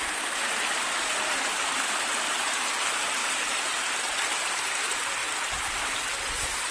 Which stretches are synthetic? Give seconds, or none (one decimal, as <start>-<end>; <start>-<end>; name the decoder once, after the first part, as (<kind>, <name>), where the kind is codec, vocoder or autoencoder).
none